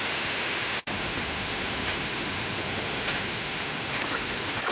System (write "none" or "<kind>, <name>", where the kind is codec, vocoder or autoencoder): autoencoder, DAC-VAE